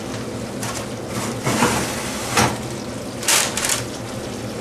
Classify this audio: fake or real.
real